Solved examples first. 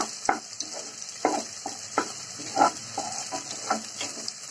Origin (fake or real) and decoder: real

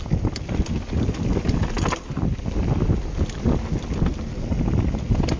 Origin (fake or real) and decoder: real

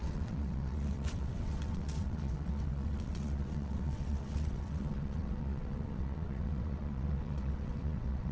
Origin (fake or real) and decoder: fake, vocoder, WaveNeXt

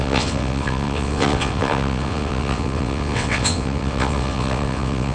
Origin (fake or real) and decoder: fake, vocoder, WaveNeXt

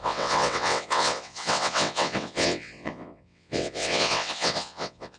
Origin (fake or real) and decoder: fake, vocoder, WaveNeXt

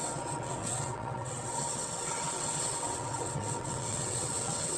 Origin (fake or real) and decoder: fake, vocoder, WaveNeXt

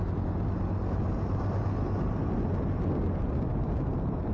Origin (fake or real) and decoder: real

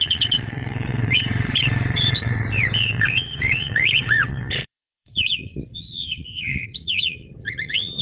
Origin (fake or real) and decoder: fake, vocoder, WaveNeXt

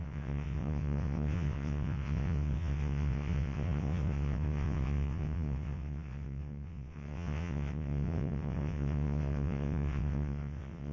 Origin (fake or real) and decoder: fake, vocoder, WaveNeXt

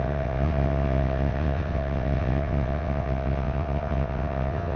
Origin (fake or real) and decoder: fake, vocoder, WaveNeXt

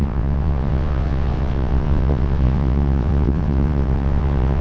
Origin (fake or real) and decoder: fake, vocoder, WaveNeXt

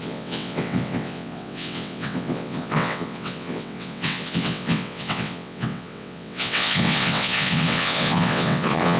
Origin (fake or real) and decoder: fake, vocoder, WaveNeXt